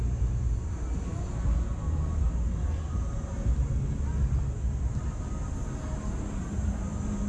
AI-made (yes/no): no